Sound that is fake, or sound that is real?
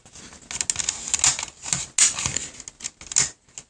real